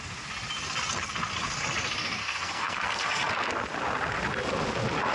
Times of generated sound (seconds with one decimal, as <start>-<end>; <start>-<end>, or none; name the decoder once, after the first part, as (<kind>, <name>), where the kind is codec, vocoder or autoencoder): 2.2-3.3 (codec, SNAC)